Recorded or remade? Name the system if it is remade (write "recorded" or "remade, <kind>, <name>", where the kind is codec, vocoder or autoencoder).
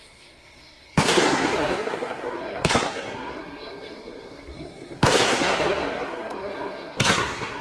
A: remade, codec, SNAC